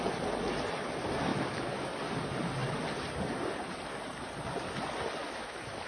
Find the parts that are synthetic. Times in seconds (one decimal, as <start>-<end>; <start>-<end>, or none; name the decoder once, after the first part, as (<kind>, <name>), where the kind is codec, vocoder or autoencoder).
1.3-2.0 (autoencoder, DAC-VAE); 5.2-5.9